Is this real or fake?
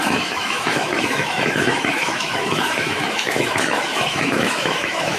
fake